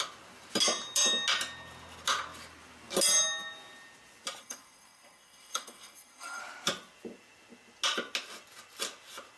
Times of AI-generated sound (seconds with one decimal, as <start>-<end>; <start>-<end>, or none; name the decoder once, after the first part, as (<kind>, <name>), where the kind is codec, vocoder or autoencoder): 4.4-6.4 (codec, SNAC)